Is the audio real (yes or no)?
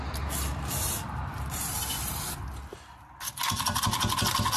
yes